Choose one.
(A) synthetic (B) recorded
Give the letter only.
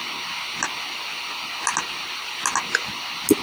B